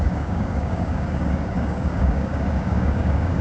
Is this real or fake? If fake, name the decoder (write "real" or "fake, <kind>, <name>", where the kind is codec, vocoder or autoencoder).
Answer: fake, codec, DAC